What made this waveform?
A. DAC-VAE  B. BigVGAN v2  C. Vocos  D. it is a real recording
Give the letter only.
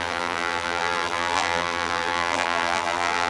B